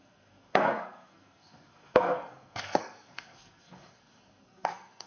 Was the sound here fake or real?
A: fake